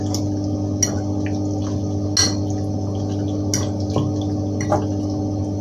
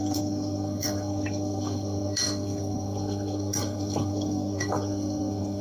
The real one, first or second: first